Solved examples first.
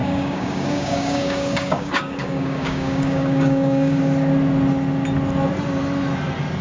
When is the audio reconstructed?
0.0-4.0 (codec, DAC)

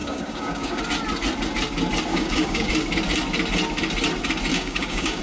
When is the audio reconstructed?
0.0-0.8 (codec, DAC); 2.1-2.7; 4.5-5.2

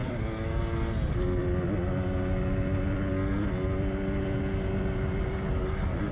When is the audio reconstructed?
0.0-0.6 (codec, DAC)

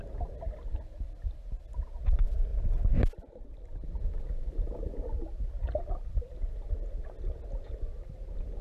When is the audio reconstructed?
none

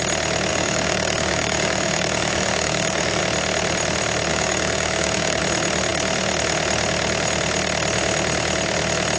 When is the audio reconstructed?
0.5-3.2 (codec, DAC); 4.3-5.4

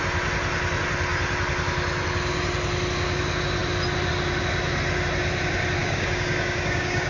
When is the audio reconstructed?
5.8-7.1 (codec, DAC)

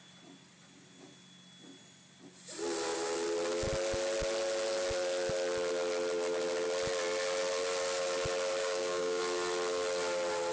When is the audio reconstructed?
8.6-9.2 (codec, DAC)